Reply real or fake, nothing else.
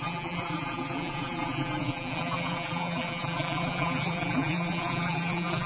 fake